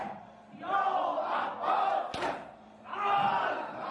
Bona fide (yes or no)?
yes